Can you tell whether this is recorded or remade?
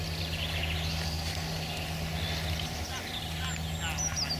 recorded